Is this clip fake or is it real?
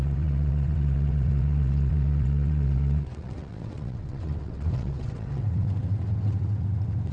fake